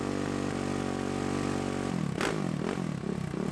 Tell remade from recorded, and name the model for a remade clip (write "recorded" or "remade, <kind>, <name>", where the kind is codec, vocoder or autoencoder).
recorded